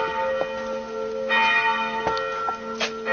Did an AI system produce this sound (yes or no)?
no